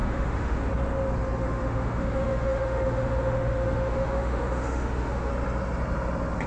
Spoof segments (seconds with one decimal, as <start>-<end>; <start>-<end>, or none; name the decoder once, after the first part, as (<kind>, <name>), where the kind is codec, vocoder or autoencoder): 0.0-0.6 (autoencoder, DAC-VAE); 1.4-5.3